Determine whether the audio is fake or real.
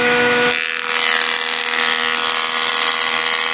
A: real